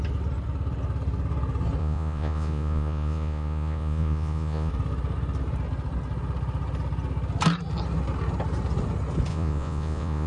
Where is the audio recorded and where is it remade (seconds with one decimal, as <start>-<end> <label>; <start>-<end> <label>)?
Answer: 0.0-1.8 recorded; 1.8-4.7 remade; 4.7-9.3 recorded; 9.3-10.3 remade